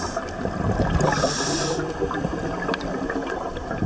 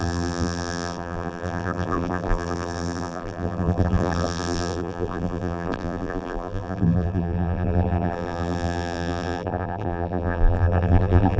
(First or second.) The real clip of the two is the first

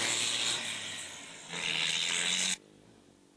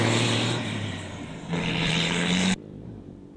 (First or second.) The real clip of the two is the first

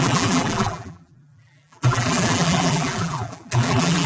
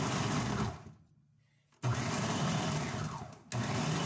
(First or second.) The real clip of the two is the second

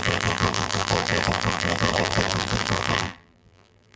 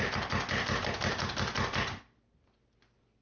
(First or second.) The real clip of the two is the second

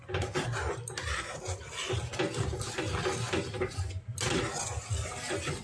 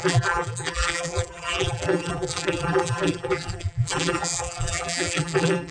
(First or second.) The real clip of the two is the first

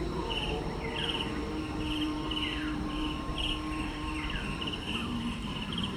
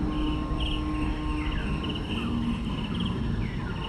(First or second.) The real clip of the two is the second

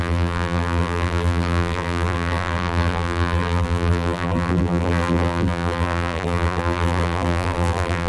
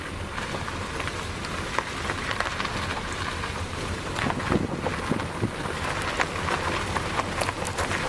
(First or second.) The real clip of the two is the second